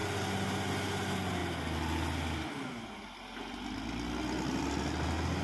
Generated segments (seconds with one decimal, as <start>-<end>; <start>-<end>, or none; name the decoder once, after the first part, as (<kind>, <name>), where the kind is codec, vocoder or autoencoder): none